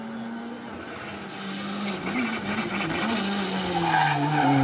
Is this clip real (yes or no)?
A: yes